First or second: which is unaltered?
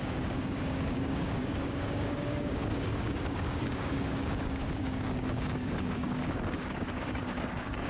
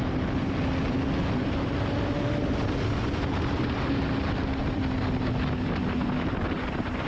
second